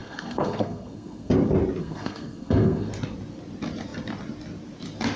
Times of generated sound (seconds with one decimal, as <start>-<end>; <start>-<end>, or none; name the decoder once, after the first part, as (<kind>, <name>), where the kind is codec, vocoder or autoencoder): 0.0-1.3 (codec, SNAC); 1.8-2.9